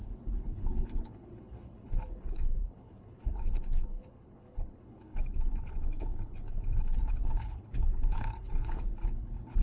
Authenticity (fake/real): fake